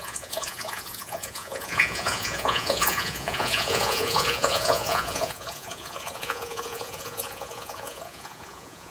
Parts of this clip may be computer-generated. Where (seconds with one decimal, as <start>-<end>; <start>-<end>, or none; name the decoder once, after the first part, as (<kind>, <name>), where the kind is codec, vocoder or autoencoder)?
0.0-8.9 (vocoder, Vocos)